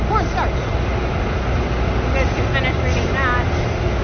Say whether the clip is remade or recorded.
recorded